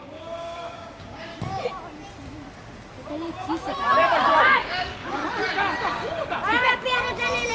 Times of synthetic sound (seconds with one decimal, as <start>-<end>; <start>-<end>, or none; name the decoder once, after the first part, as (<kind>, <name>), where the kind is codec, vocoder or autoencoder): 0.0-1.3 (codec, DAC); 4.4-5.2